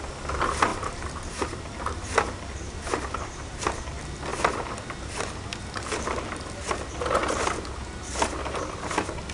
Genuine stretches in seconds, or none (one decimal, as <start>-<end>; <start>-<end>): 0.0-0.7; 3.6-9.3